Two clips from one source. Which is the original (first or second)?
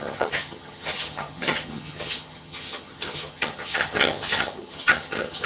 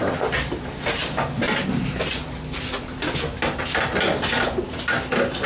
second